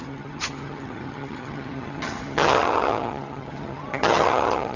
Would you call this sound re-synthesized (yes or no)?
yes